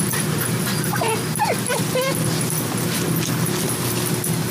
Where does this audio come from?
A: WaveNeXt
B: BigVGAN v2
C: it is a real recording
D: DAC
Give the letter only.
C